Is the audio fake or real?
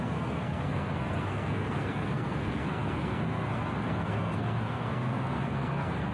fake